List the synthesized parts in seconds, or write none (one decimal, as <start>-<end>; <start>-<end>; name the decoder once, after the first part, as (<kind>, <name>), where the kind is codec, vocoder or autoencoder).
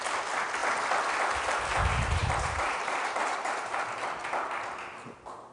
2.2-3.8 (vocoder, BigVGAN v2)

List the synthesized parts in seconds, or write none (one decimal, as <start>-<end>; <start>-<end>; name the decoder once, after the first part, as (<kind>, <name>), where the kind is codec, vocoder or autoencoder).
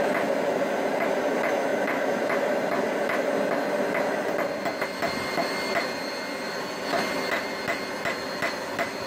1.7-2.8 (vocoder, BigVGAN v2)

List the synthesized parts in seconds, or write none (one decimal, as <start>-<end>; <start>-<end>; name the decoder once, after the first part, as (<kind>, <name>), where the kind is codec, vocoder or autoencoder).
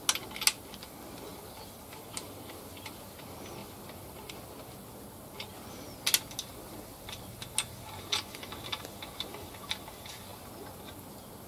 1.3-3.1 (vocoder, BigVGAN v2); 3.6-4.3; 6.5-7.3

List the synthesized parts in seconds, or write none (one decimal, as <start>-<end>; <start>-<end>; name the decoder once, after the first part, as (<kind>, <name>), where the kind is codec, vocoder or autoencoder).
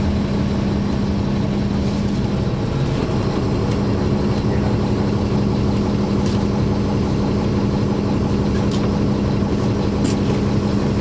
none